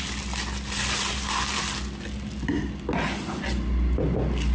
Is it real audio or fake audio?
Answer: real